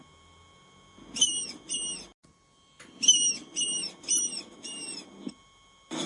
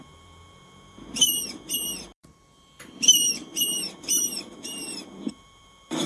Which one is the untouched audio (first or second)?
first